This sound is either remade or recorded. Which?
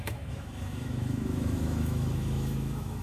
remade